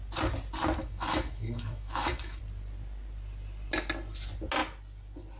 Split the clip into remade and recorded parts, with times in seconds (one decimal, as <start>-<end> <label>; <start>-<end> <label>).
0.0-0.8 recorded; 0.8-2.4 remade; 2.4-5.4 recorded